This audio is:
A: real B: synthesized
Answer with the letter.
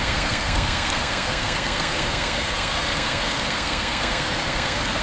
B